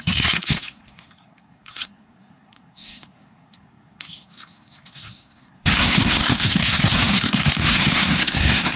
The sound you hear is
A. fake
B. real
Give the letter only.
A